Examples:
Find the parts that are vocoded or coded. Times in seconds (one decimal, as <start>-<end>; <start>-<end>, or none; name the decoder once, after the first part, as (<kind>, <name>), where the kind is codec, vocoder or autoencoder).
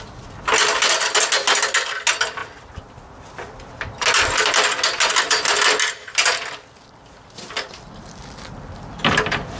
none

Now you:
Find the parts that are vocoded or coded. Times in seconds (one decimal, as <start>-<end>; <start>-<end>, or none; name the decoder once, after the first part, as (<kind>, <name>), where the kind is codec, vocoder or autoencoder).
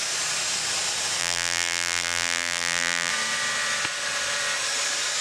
1.2-3.1 (vocoder, BigVGAN v2)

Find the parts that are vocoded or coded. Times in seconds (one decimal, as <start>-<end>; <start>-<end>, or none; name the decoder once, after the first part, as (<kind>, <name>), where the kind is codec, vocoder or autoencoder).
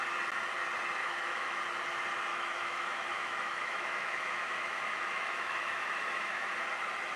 1.0-1.6 (autoencoder, DAC-VAE); 2.3-6.5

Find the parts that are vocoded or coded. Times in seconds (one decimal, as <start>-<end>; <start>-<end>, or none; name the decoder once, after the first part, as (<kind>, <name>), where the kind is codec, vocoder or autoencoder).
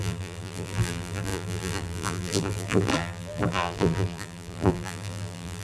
0.0-5.6 (vocoder, BigVGAN v2)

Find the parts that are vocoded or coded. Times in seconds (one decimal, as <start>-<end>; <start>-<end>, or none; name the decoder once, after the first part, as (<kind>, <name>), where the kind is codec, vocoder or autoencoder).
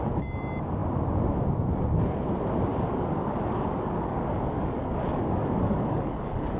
2.7-6.6 (codec, DAC)